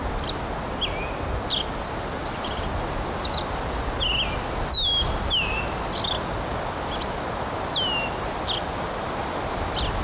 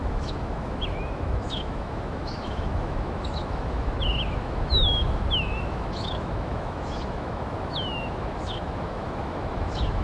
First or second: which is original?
first